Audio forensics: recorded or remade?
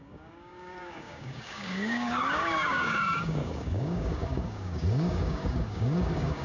remade